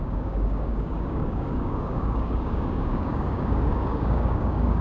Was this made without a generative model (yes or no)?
no